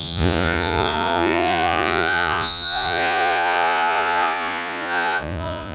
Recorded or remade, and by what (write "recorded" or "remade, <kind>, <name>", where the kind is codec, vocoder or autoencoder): remade, vocoder, Vocos